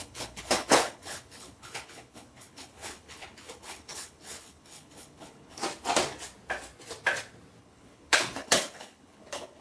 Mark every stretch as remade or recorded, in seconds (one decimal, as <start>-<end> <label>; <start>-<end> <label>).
0.0-5.6 remade; 5.6-7.6 recorded; 7.6-9.6 remade